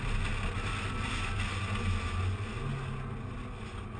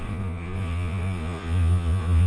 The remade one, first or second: second